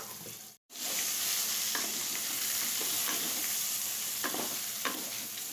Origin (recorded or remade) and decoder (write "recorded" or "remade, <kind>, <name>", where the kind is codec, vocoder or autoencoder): remade, vocoder, BigVGAN v2